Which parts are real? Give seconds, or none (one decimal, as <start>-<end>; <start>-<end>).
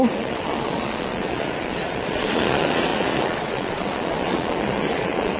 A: none